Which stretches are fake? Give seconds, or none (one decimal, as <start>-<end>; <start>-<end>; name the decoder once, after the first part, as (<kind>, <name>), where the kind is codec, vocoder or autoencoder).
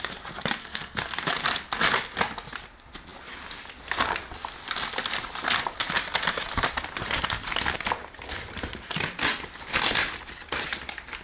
0.6-1.1 (codec, SNAC)